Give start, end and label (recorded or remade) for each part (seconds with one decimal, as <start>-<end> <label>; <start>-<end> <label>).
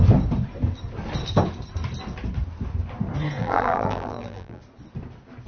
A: 0.0-3.4 recorded; 3.4-4.6 remade; 4.6-5.5 recorded